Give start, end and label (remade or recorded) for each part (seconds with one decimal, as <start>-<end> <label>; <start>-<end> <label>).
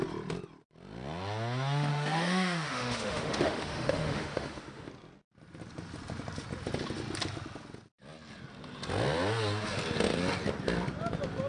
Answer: 0.0-1.9 recorded; 1.9-4.9 remade; 4.9-11.5 recorded